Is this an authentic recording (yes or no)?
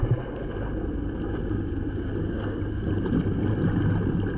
yes